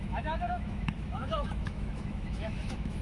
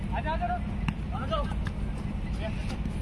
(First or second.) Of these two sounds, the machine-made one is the first